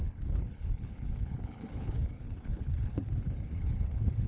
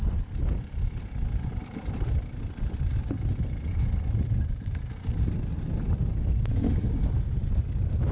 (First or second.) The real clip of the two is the second